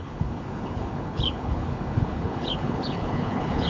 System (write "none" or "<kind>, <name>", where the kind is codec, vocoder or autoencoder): codec, HILCodec